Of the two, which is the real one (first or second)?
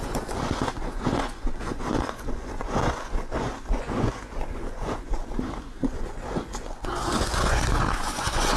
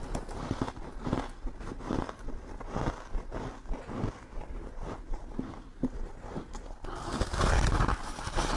second